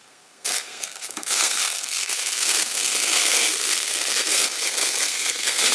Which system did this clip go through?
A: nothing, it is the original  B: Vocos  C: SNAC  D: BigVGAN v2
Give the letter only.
C